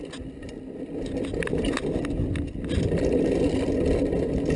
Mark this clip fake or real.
real